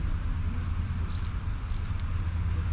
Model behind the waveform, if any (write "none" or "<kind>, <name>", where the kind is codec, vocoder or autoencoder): none